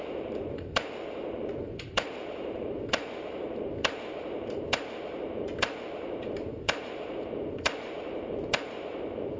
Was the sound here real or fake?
fake